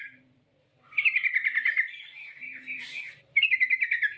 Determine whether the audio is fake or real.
fake